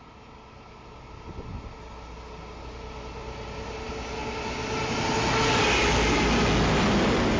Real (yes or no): yes